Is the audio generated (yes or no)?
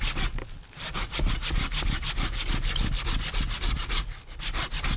no